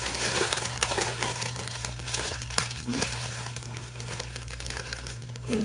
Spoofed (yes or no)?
yes